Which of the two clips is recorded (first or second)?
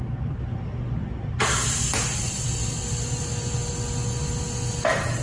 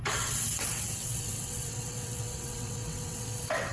first